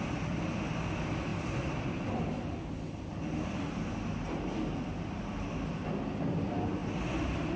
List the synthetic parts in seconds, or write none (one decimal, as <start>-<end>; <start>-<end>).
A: none